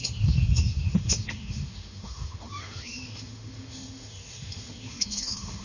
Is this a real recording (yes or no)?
no